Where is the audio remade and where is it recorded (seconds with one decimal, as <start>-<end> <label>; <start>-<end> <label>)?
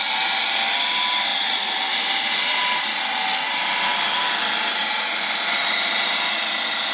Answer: 0.0-6.9 recorded